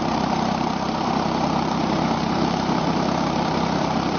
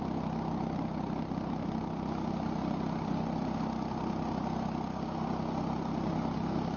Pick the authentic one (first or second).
second